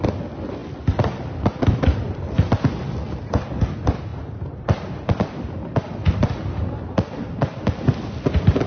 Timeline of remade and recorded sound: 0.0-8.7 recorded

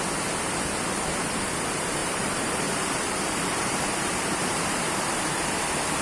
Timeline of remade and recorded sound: 0.0-2.0 recorded; 2.0-5.6 remade; 5.6-6.0 recorded